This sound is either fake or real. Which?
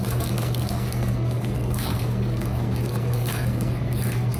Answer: fake